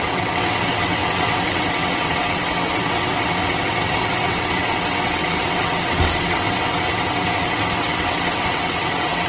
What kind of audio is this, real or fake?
fake